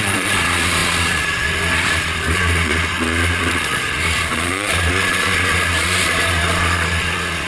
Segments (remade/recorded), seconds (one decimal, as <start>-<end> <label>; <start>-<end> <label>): 0.0-7.5 remade